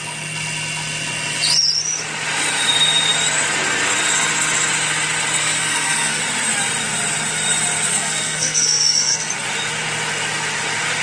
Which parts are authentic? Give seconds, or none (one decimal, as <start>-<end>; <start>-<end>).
0.0-5.4; 6.2-7.9; 9.3-11.0